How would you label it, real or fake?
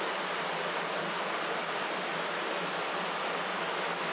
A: real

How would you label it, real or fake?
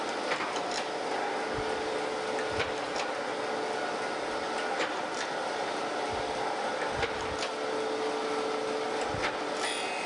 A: real